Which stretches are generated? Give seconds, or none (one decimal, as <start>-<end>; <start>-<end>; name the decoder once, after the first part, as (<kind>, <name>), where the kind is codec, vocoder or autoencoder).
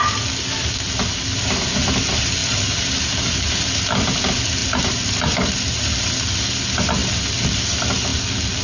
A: none